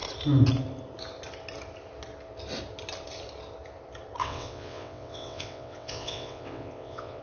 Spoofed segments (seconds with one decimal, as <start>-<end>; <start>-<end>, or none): 4.2-7.2